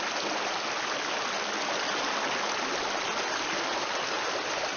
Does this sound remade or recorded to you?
recorded